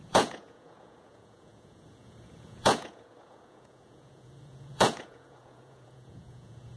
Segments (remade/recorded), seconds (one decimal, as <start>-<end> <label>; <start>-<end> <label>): 0.0-6.8 remade